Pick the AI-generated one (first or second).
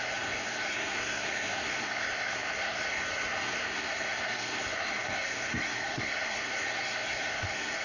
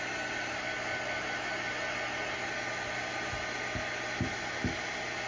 first